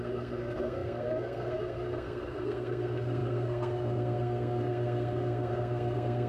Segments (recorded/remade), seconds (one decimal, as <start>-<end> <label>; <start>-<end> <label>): 0.0-6.3 remade